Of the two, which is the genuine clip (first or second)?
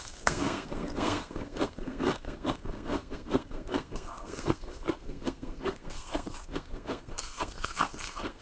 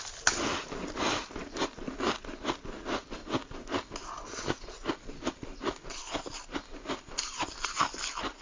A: second